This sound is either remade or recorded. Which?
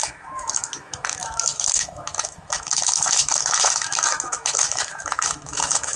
remade